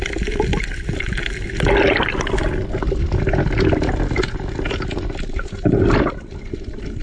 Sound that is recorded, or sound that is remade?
recorded